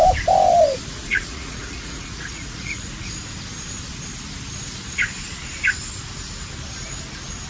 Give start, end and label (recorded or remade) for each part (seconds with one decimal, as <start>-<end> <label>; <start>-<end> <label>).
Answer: 0.0-0.9 recorded; 0.9-3.1 remade; 3.1-7.5 recorded